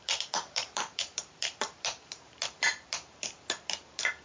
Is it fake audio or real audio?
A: fake